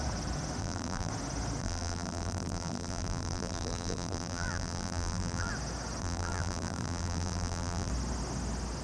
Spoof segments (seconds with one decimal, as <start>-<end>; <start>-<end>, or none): 0.6-1.1; 1.6-5.5; 6.0-7.9